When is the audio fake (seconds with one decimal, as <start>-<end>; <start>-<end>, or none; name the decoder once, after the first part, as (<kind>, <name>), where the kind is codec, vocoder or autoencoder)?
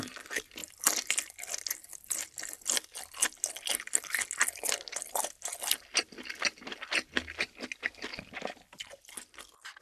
none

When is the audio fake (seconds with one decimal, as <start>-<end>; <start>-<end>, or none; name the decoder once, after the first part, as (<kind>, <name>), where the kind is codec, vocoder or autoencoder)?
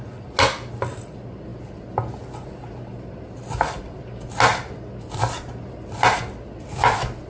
none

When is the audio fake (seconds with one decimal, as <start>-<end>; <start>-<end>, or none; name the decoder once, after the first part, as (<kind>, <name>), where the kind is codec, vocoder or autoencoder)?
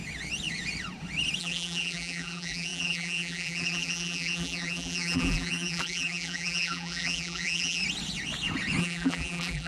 1.4-7.8 (vocoder, BigVGAN v2); 8.8-9.7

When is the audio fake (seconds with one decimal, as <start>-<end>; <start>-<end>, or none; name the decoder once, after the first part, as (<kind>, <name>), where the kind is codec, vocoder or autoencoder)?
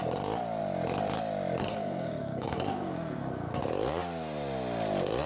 1.6-3.6 (codec, SNAC)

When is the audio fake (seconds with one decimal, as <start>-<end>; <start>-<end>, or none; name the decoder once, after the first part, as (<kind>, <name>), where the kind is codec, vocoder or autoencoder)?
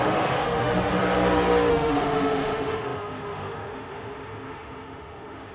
0.0-1.0 (autoencoder, DAC-VAE); 1.7-5.5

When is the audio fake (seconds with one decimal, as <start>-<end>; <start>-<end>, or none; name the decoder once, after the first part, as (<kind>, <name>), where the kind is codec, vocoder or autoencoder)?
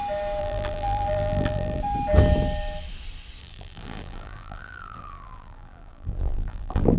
0.4-1.8 (vocoder, BigVGAN v2); 3.4-7.0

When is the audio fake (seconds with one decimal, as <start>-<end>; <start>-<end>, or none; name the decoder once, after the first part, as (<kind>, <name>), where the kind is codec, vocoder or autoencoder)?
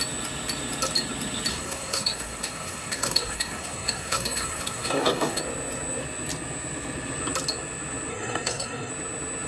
1.5-5.4 (codec, SNAC); 8.1-8.9